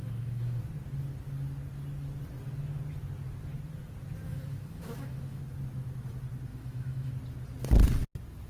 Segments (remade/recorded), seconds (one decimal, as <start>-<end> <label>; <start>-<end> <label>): 0.0-0.6 remade; 0.6-4.3 recorded; 4.3-5.4 remade; 5.4-6.5 recorded; 6.5-7.1 remade; 7.1-8.5 recorded

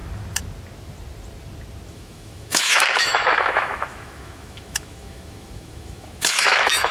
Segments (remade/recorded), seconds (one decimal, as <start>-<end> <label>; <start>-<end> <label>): 0.0-1.9 recorded; 1.9-6.9 remade